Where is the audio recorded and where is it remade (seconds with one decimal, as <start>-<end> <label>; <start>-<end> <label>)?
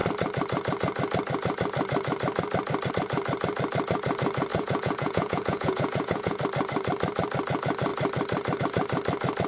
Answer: 0.0-4.5 recorded; 4.5-6.4 remade; 6.4-9.5 recorded